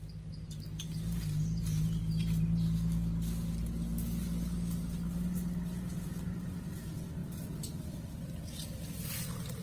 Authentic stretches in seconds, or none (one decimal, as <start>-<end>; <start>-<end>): 0.0-9.6